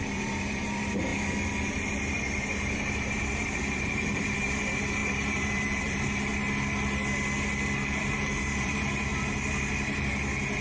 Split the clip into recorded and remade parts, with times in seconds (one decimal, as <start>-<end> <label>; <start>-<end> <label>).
0.0-1.1 remade; 1.1-1.7 recorded; 1.7-6.4 remade; 6.4-8.0 recorded; 8.0-9.1 remade; 9.1-10.6 recorded